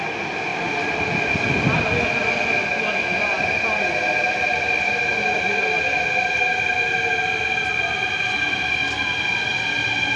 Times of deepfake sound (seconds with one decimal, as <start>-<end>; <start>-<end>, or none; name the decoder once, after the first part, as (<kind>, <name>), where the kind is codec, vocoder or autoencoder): 0.5-1.9 (vocoder, BigVGAN v2); 4.3-5.4